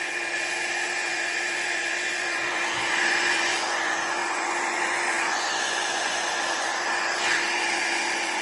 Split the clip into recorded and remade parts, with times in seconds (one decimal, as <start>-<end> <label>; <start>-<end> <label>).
0.0-8.4 remade